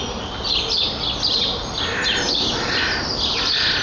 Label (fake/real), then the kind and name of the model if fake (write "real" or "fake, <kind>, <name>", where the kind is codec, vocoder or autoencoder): real